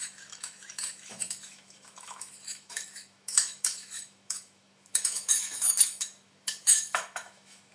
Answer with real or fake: fake